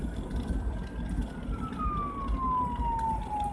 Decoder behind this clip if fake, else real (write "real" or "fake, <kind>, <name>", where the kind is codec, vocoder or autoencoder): real